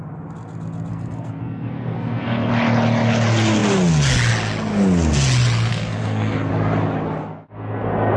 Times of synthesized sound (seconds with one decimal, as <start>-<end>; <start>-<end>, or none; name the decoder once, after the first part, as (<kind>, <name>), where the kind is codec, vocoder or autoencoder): 0.9-2.5 (codec, SNAC); 5.7-6.5; 7.2-8.2